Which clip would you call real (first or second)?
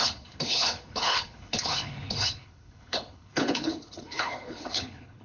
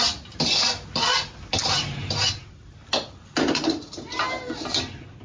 second